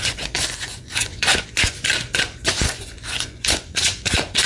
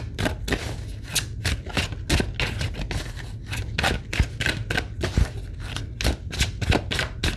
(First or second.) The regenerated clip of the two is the first